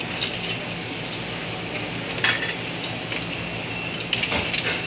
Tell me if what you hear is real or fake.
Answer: real